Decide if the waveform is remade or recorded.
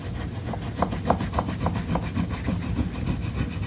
recorded